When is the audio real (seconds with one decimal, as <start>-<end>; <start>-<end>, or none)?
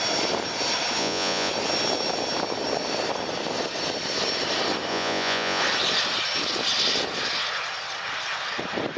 0.0-1.0; 1.5-4.9; 5.6-9.0